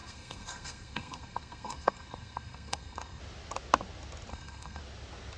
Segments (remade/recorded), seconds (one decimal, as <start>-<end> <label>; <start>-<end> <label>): 0.0-3.2 remade; 3.2-4.3 recorded; 4.3-4.8 remade; 4.8-5.4 recorded